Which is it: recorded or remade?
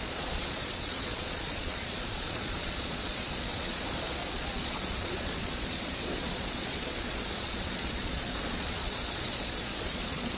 remade